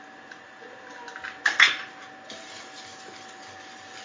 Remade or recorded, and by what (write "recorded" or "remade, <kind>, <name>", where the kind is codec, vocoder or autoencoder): recorded